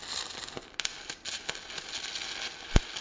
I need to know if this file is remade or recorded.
recorded